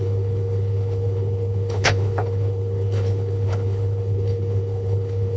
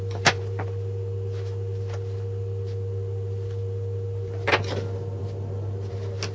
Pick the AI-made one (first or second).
first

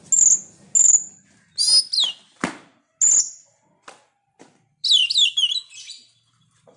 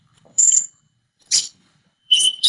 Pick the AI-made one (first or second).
second